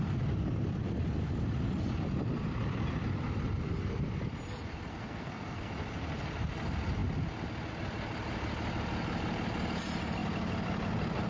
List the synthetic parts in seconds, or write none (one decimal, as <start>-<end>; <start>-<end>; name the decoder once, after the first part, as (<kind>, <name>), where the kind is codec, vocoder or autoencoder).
4.9-5.7 (codec, SNAC)